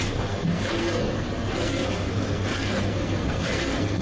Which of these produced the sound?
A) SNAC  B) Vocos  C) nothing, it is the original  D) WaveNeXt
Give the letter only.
A